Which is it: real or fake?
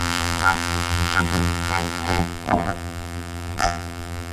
fake